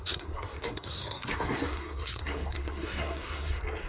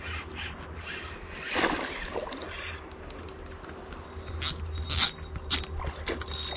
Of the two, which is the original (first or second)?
second